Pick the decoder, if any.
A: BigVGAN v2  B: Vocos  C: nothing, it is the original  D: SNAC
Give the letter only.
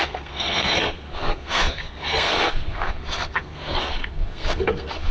D